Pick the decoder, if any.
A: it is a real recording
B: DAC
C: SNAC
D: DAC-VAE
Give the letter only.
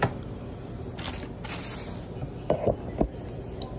A